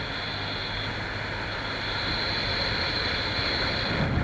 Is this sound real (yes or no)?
yes